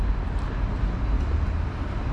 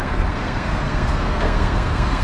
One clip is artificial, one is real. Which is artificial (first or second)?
second